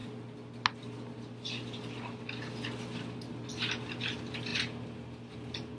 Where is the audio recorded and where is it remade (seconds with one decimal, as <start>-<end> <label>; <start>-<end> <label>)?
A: 0.0-5.8 recorded